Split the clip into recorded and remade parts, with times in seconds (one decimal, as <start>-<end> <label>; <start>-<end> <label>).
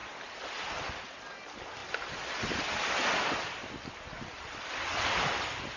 0.0-5.8 recorded